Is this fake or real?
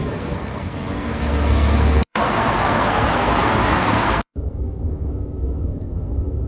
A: fake